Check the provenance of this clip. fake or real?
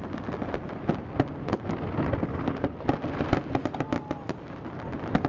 real